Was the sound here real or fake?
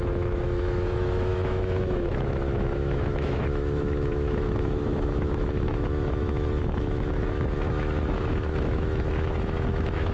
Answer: fake